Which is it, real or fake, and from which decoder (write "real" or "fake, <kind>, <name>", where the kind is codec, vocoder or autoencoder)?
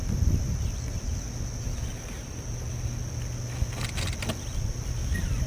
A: real